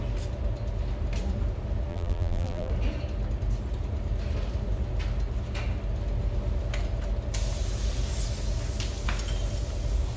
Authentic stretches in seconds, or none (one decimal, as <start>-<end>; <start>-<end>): 0.0-1.9; 2.7-10.2